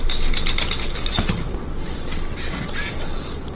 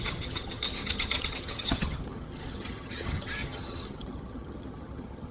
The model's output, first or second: second